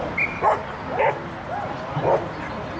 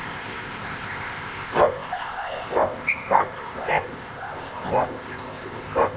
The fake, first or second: second